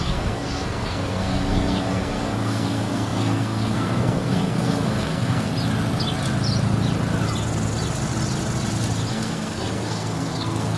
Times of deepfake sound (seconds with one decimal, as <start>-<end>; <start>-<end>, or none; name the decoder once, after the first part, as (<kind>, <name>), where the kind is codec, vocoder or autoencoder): 0.0-5.5 (codec, SNAC); 9.1-10.8